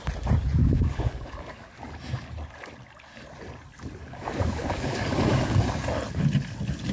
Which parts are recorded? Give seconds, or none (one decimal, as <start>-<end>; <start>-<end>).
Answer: 0.0-0.6; 1.7-4.0; 5.6-6.9